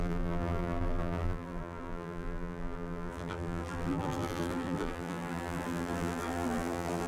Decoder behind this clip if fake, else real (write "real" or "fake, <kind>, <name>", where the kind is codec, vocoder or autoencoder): fake, vocoder, BigVGAN v2